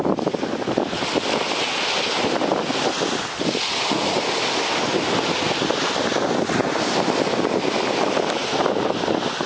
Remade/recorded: recorded